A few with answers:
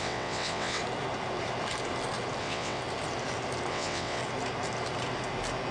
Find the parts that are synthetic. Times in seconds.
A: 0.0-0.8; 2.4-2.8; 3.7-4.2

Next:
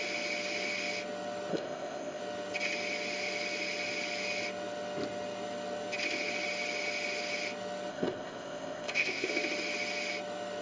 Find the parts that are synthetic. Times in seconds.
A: 1.5-2.2; 7.9-9.3

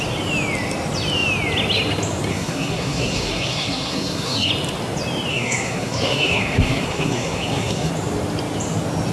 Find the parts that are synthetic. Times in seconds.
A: 2.3-4.5; 5.3-7.9

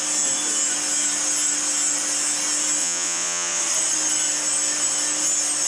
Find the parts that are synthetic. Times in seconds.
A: 2.8-3.6

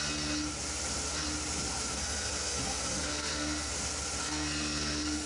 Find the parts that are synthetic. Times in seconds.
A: 1.9-3.7; 4.2-5.3